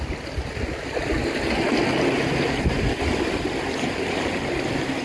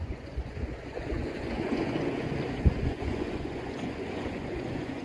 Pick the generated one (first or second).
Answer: second